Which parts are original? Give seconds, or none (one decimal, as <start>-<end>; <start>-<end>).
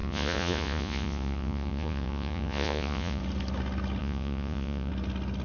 3.2-4.0; 4.9-5.4